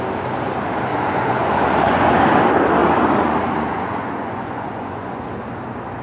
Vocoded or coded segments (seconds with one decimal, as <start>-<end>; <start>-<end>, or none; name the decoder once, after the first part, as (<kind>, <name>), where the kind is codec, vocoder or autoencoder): 0.9-2.1 (vocoder, Vocos); 2.8-5.2